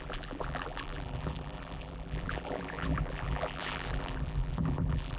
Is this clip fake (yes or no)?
yes